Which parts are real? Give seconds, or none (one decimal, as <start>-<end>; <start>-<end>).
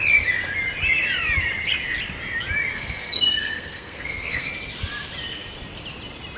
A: 0.0-2.7; 4.5-6.4